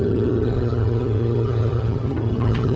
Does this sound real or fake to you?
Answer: fake